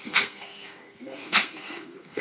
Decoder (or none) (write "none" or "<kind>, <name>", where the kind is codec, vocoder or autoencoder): codec, SNAC